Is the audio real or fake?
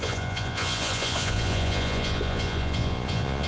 fake